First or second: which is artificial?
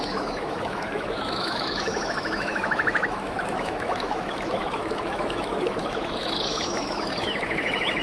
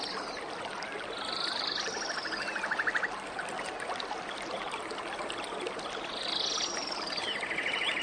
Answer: first